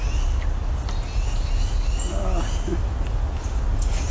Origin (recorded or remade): recorded